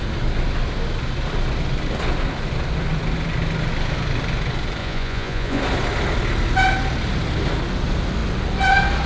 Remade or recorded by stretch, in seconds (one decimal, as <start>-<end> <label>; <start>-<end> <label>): 0.0-4.8 recorded; 4.8-5.6 remade; 5.6-9.1 recorded